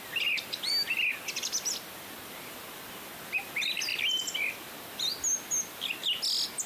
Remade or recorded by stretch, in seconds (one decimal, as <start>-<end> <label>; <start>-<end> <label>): 0.0-6.7 recorded

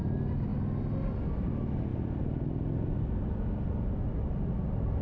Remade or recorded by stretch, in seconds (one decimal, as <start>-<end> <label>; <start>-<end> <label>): 0.0-1.9 recorded; 1.9-3.9 remade; 3.9-5.0 recorded